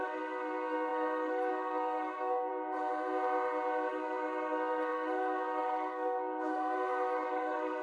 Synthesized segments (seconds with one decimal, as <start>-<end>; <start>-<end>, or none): 0.0-2.5; 3.9-7.8